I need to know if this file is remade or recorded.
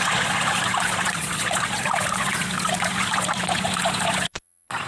remade